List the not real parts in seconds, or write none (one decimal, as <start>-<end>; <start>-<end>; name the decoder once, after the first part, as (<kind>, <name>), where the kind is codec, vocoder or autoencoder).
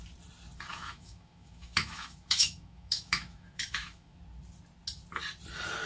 0.7-4.2 (autoencoder, DAC-VAE)